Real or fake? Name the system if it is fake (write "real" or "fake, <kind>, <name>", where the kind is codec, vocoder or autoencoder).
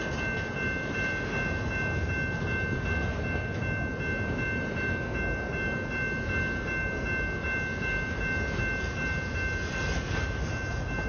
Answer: real